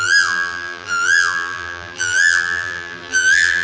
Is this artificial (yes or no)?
yes